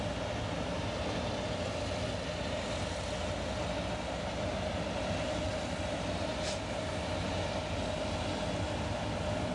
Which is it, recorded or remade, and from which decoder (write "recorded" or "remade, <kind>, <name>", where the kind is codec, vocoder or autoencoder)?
recorded